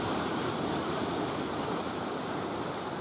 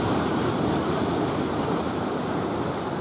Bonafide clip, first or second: second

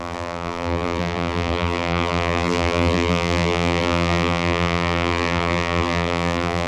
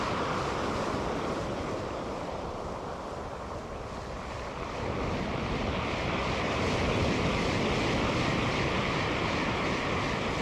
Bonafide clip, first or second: second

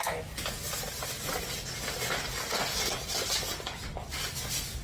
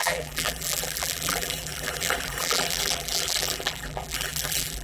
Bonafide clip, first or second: first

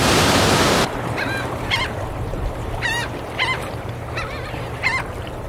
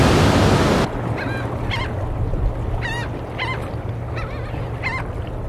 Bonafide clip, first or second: second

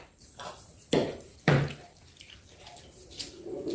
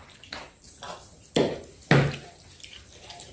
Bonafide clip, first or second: second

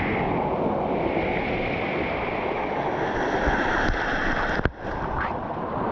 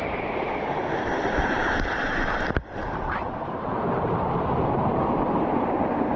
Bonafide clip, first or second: first